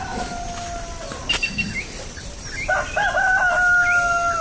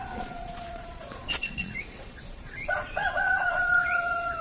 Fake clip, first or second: second